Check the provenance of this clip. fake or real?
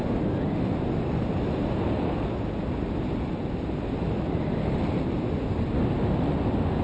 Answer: real